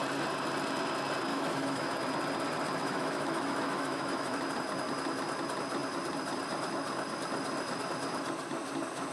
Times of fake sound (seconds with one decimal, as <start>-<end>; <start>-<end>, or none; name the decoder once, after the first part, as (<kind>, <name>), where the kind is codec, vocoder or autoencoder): 1.3-1.9 (autoencoder, DAC-VAE); 2.8-4.4